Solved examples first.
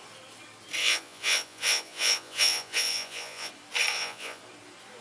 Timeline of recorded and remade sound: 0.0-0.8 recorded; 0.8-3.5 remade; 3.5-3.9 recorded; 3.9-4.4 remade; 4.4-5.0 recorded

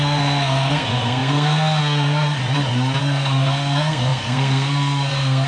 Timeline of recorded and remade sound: 0.0-2.4 remade; 2.4-3.0 recorded; 3.0-5.5 remade

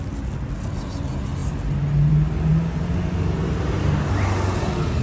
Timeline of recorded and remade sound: 0.0-5.0 recorded

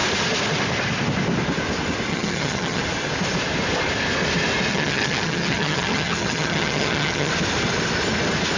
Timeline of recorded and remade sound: 0.0-2.1 recorded; 2.1-2.8 remade; 2.8-4.7 recorded; 4.7-7.3 remade; 7.3-8.6 recorded